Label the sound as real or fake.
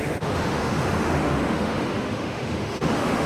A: fake